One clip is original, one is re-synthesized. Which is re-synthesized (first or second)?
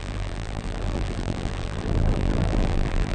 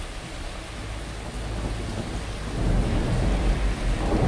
first